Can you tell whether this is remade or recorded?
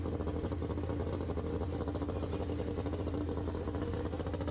recorded